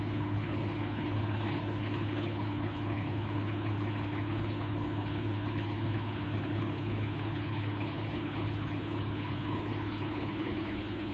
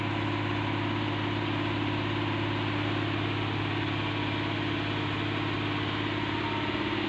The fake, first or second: first